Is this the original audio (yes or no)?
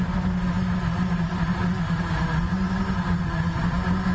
yes